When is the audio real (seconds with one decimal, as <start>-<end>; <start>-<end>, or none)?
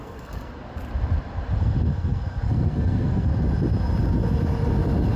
0.6-1.6; 3.3-5.2